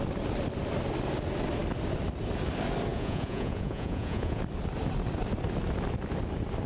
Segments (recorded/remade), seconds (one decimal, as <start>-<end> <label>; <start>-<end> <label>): 0.0-2.9 recorded; 2.9-4.4 remade; 4.4-6.7 recorded

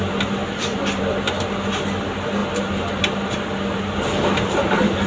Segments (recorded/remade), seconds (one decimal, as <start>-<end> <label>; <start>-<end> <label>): 0.0-5.1 recorded

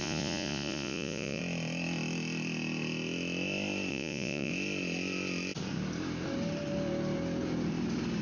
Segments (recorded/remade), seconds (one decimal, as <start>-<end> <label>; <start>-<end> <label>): 0.0-1.4 remade; 1.4-3.9 recorded; 3.9-4.5 remade; 4.5-8.2 recorded

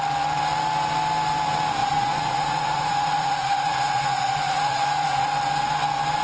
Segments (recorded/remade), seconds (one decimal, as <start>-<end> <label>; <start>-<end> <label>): 0.0-1.8 recorded; 1.8-5.4 remade; 5.4-6.2 recorded

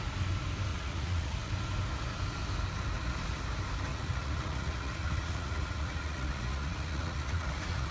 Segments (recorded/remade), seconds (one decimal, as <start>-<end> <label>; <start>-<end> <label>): 0.0-0.7 recorded; 0.7-1.5 remade; 1.5-3.9 recorded; 3.9-7.9 remade

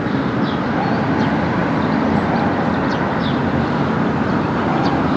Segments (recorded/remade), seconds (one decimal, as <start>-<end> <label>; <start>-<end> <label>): 0.0-5.2 recorded

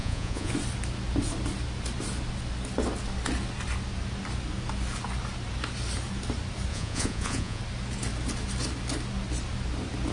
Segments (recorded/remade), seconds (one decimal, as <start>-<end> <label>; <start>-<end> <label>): 0.0-0.5 remade; 0.5-6.7 recorded; 6.7-7.6 remade; 7.6-10.1 recorded